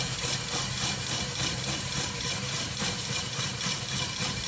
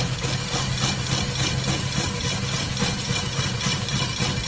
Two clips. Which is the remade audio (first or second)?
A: first